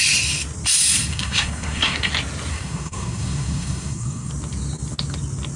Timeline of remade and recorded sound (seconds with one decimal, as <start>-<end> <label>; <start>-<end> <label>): 0.0-1.1 recorded; 1.1-2.1 remade; 2.1-2.5 recorded; 2.5-4.3 remade; 4.3-5.6 recorded